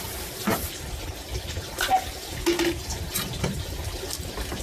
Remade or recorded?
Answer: recorded